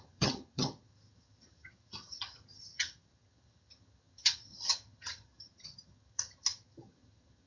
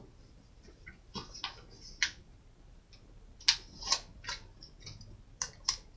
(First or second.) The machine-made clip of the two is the first